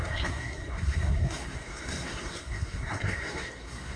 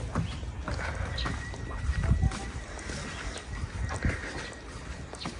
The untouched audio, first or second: second